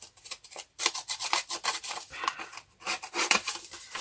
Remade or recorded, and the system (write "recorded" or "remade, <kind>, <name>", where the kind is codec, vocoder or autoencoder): remade, vocoder, BigVGAN v2